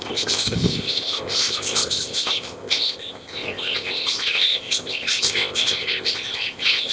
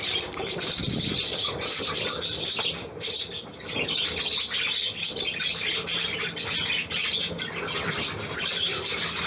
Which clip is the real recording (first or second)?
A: second